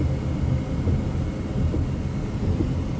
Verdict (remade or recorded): recorded